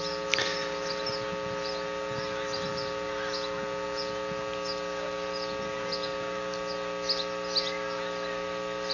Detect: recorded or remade recorded